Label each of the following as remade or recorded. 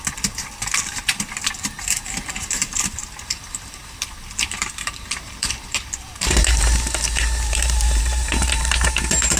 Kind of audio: remade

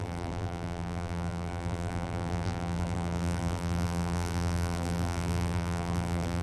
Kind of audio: remade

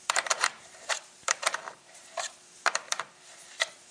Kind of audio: remade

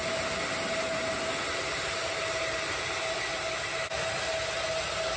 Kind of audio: recorded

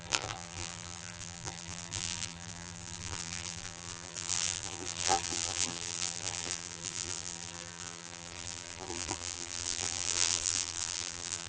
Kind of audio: remade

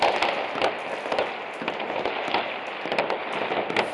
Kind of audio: recorded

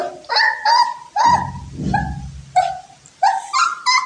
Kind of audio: recorded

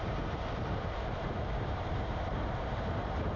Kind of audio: remade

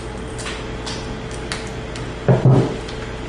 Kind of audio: recorded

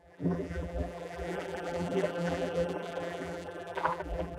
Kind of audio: remade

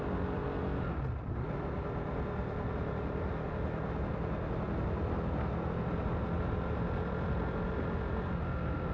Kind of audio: recorded